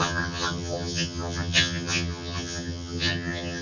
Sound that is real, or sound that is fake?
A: fake